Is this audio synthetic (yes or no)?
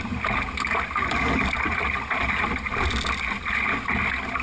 no